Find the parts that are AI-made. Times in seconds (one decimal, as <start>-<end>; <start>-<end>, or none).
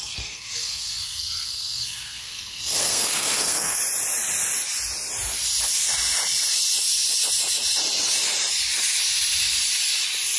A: 0.0-3.8